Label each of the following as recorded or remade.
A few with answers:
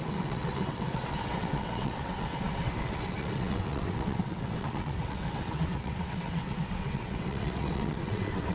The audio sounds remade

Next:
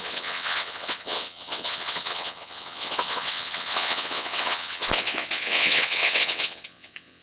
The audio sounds remade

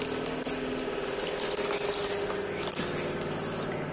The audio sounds recorded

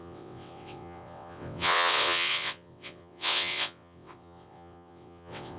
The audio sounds remade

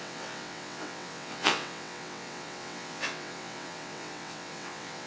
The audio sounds remade